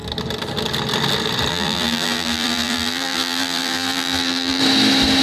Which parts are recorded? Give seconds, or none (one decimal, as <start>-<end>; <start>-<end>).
0.0-1.5; 4.6-5.2